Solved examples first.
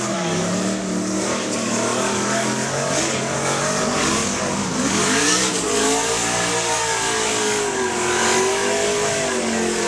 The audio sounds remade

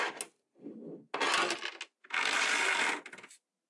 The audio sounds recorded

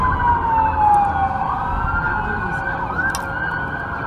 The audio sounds recorded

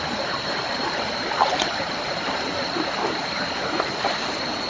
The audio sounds remade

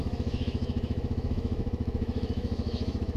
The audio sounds remade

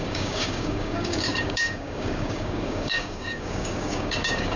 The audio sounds remade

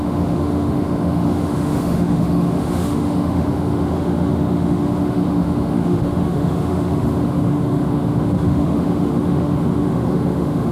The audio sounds remade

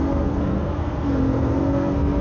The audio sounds remade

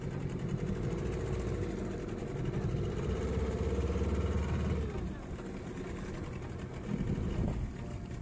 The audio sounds recorded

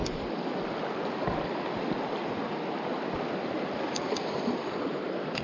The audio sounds recorded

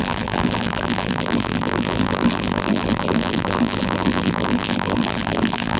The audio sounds remade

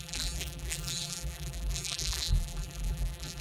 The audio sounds remade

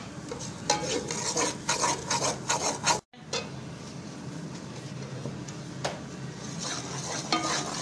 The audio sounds recorded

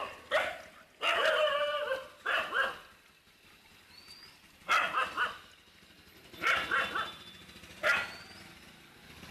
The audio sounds recorded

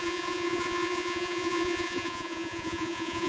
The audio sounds remade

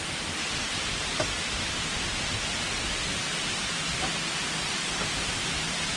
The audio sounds recorded